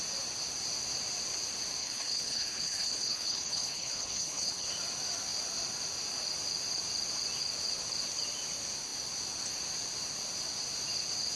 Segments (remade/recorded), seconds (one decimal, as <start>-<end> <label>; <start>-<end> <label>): 0.0-1.8 recorded; 1.8-4.7 remade; 4.7-11.4 recorded